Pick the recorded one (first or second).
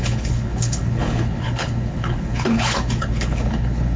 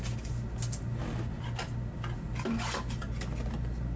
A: second